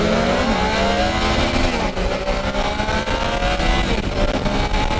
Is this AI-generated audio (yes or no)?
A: no